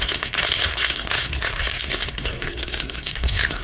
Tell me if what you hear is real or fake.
fake